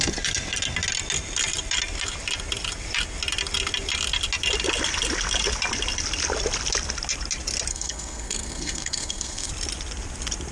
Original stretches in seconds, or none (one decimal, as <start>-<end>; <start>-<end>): 0.0-7.7; 9.5-10.5